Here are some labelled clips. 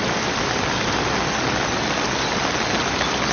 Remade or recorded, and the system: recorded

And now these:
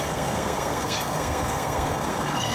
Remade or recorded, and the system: remade, codec, SNAC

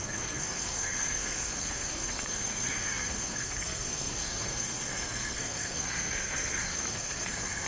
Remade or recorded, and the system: remade, codec, SNAC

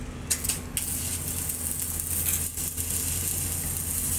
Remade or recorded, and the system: recorded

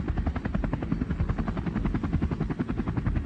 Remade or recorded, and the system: recorded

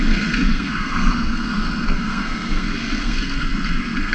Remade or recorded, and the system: remade, codec, SNAC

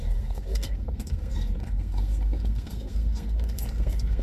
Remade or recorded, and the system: remade, codec, SNAC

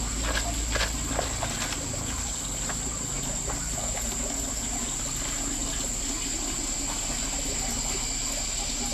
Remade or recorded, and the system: recorded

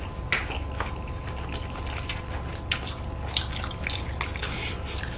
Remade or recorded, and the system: recorded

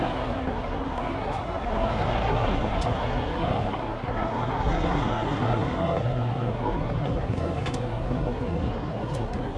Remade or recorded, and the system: remade, codec, SNAC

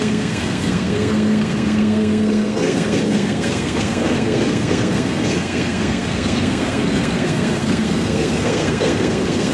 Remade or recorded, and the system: remade, codec, SNAC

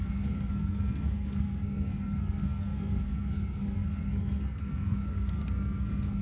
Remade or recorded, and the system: remade, codec, SNAC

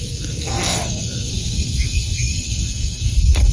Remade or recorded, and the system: remade, codec, SNAC